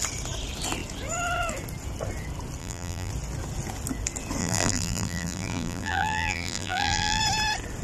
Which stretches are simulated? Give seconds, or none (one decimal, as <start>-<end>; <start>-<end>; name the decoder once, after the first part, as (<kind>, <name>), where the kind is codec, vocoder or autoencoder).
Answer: 2.6-3.1 (vocoder, BigVGAN v2); 4.4-7.2